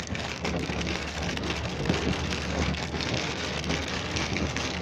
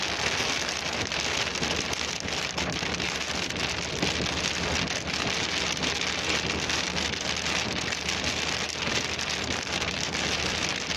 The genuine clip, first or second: second